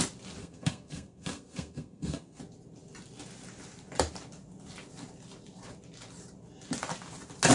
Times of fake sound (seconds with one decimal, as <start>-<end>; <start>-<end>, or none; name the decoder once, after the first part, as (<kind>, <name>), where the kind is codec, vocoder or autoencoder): 0.4-2.4 (codec, SNAC)